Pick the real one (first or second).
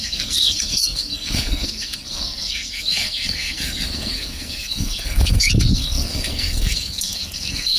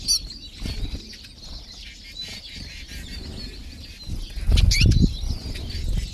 second